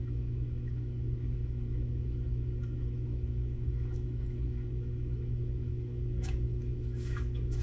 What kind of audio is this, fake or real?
fake